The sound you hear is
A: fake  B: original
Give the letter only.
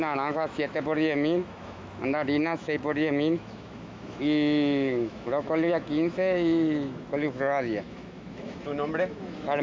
A